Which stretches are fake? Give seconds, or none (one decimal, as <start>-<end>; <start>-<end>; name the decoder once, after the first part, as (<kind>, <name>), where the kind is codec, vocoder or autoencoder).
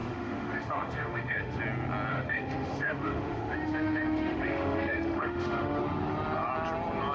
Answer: 0.0-1.6 (autoencoder, DAC-VAE); 2.1-5.8